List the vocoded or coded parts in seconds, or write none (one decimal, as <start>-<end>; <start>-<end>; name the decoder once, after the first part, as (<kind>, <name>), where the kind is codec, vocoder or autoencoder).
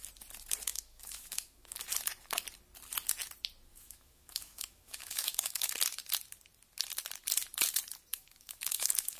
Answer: 0.7-1.8 (autoencoder, DAC-VAE); 3.7-5.7; 8.1-9.2